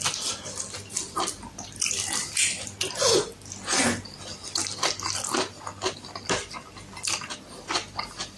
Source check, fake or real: real